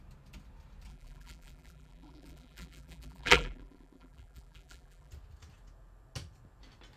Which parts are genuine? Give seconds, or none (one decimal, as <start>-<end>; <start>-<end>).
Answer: 0.0-0.9; 5.1-7.0